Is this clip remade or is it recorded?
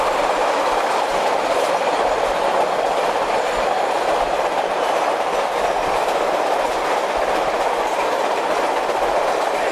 recorded